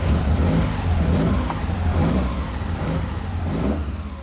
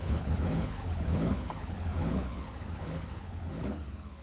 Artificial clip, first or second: second